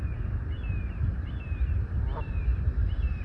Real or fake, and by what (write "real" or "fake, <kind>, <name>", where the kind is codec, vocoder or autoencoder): real